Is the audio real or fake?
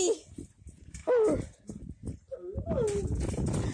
real